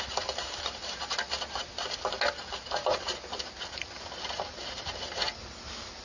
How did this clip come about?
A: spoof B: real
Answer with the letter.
B